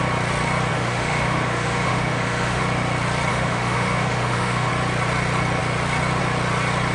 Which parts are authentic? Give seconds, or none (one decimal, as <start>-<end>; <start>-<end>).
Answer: 0.0-0.7; 2.6-3.3; 4.7-6.9